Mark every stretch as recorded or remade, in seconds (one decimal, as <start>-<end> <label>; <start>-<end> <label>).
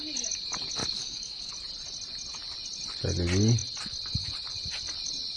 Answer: 0.0-0.8 recorded; 0.8-1.5 remade; 1.5-5.4 recorded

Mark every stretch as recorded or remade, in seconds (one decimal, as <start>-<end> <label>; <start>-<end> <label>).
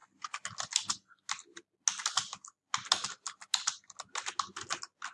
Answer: 0.0-5.1 recorded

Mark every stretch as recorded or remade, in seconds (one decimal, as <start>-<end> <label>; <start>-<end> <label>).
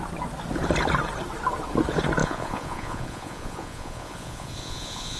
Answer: 0.0-2.2 recorded; 2.2-5.2 remade